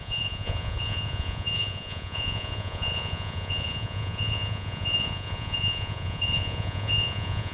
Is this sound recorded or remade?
remade